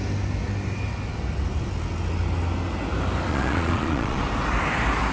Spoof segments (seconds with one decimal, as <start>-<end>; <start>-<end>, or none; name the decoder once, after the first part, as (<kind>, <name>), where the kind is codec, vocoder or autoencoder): 3.3-4.2 (vocoder, Vocos)